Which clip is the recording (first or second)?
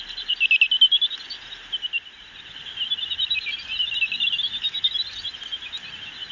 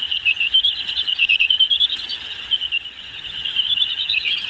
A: first